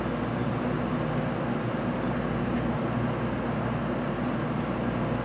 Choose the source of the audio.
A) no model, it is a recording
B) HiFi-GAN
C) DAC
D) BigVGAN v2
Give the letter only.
A